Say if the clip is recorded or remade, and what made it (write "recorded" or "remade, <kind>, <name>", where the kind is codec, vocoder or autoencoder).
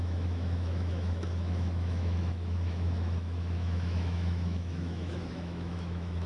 remade, autoencoder, DAC-VAE